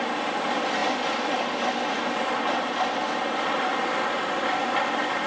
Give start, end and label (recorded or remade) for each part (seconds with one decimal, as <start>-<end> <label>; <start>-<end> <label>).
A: 0.0-5.3 recorded